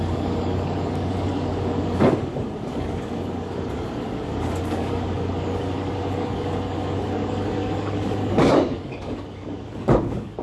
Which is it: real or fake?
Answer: fake